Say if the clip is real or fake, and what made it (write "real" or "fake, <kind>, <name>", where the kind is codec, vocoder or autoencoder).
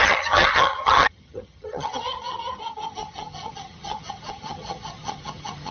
fake, vocoder, HiFi-GAN